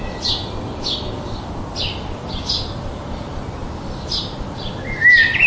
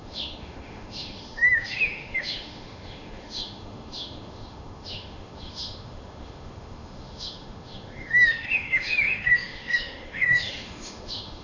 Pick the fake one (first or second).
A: second